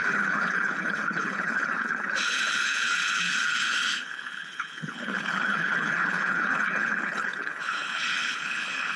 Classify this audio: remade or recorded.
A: remade